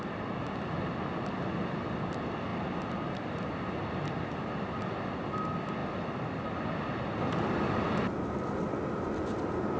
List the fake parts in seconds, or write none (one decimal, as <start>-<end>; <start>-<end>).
none